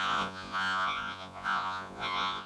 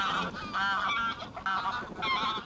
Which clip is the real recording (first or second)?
second